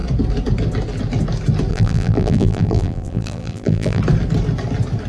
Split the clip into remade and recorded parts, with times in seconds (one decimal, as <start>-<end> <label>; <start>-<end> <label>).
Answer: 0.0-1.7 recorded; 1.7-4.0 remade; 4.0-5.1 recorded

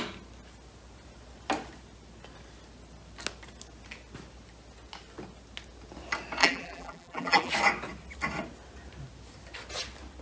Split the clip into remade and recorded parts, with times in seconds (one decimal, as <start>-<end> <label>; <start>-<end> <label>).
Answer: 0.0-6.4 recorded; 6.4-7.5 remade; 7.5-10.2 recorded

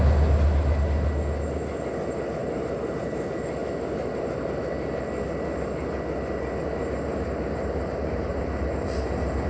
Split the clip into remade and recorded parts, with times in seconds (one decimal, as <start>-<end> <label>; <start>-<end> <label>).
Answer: 0.0-2.4 recorded; 2.4-2.9 remade; 2.9-6.8 recorded; 6.8-9.5 remade

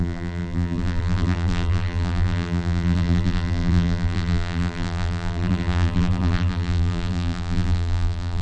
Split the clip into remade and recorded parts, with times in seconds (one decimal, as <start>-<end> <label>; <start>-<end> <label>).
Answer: 0.0-8.4 remade